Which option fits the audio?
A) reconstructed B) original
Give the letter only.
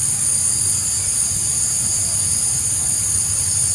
B